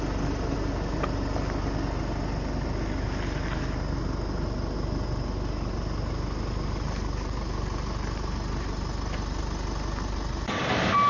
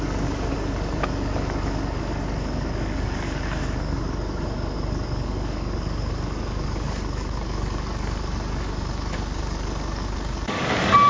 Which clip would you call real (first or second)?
first